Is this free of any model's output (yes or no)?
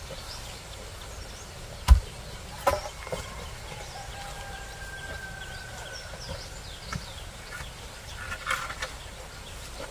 yes